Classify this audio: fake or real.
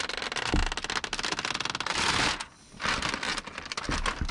real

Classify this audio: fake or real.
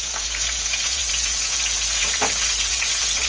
fake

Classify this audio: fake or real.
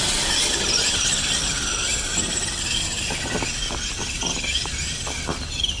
real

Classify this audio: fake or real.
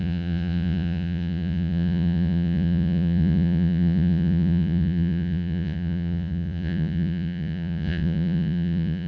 fake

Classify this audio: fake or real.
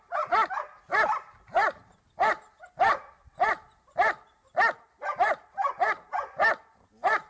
real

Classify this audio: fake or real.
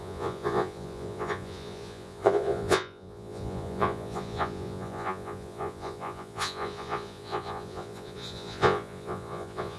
fake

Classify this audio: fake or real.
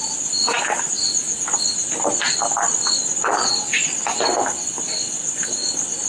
real